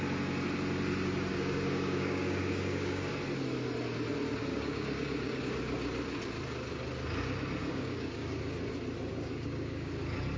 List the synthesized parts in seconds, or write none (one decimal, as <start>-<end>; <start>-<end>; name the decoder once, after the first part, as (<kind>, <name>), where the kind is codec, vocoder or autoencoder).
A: 1.3-3.1 (codec, DAC); 4.5-5.4; 7.6-8.4; 9.1-9.9